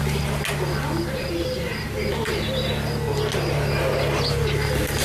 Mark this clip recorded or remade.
recorded